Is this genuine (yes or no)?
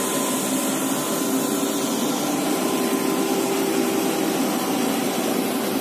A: yes